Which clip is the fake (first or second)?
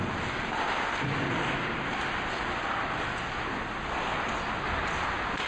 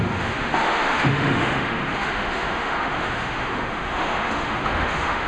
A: second